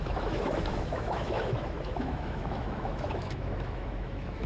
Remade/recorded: remade